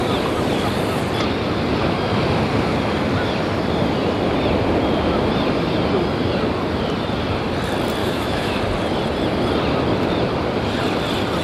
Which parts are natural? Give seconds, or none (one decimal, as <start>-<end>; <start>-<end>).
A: 0.0-8.0; 8.6-11.4